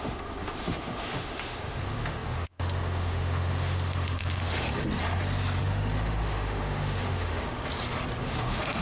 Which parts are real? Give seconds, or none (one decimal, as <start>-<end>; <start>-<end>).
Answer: 4.7-5.6; 7.6-8.2